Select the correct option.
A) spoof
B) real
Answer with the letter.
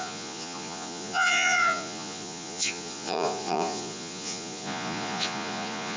A